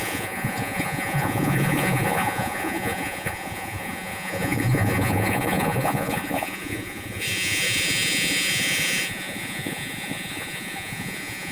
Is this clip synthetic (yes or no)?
yes